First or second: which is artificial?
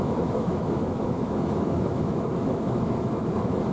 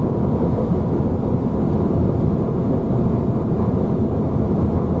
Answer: first